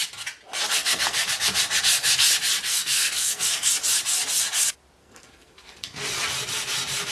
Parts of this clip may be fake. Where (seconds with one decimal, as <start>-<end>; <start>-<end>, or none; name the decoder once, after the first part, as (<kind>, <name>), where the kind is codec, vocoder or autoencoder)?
0.7-1.3 (codec, SNAC); 2.7-3.7; 5.0-6.1